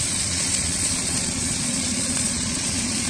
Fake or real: fake